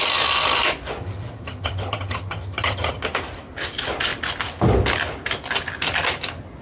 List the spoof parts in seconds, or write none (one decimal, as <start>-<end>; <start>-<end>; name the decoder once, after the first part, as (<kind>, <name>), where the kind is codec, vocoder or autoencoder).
1.0-3.0 (vocoder, HiFi-GAN)